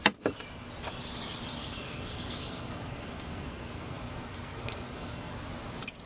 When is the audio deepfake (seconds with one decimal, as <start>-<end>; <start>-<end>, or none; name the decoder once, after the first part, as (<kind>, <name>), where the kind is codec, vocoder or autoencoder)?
1.6-5.3 (codec, SNAC)